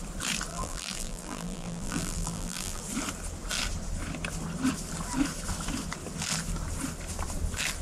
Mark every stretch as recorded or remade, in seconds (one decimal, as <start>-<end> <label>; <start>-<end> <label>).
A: 0.0-0.5 recorded; 0.5-2.8 remade; 2.8-7.8 recorded